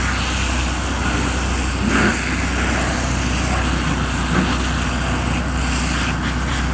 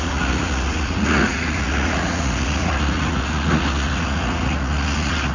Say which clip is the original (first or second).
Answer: first